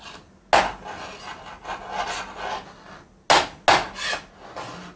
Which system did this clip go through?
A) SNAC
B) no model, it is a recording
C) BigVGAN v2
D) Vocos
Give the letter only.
B